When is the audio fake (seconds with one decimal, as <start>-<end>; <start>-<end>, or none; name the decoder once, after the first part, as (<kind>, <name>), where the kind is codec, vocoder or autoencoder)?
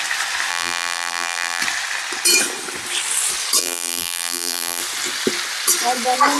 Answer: 0.5-1.6 (vocoder, BigVGAN v2); 3.6-4.8